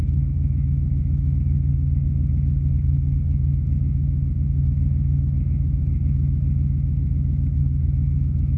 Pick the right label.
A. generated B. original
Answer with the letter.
A